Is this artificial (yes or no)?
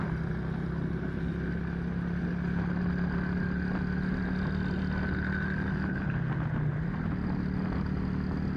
no